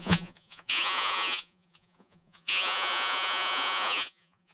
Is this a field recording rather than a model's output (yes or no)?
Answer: no